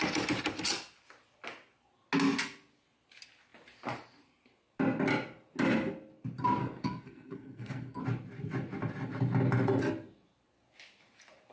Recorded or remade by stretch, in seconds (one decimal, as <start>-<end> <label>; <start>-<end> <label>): 0.0-6.6 recorded; 6.6-8.0 remade; 8.0-11.5 recorded